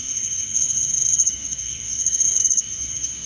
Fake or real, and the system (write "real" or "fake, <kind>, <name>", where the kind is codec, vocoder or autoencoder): fake, codec, SNAC